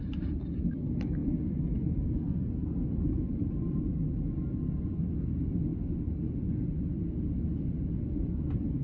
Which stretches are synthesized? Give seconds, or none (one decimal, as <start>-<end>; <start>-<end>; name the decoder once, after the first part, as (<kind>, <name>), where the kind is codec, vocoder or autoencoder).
none